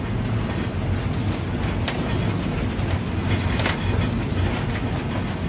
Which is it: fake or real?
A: real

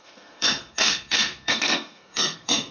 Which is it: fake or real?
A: fake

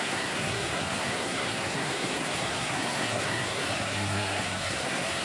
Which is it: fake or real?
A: fake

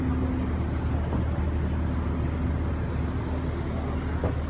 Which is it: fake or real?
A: real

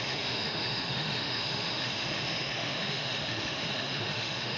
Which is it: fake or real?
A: fake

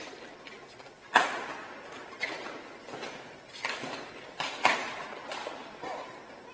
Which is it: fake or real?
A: real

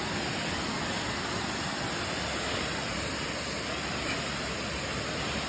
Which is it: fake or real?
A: real